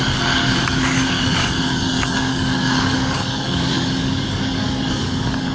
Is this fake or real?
fake